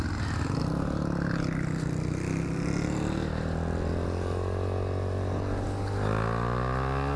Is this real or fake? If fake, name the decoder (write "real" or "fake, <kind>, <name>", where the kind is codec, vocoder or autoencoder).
real